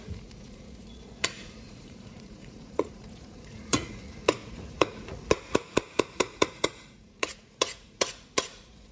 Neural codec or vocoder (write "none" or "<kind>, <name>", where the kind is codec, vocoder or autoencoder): vocoder, Vocos